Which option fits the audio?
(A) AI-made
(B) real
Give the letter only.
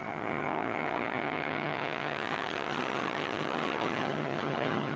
A